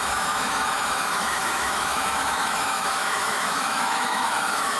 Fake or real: fake